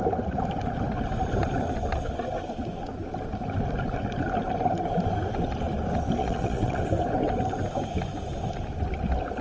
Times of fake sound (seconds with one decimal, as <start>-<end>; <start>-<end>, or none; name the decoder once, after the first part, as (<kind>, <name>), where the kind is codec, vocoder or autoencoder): 6.2-6.8 (vocoder, WaveNeXt)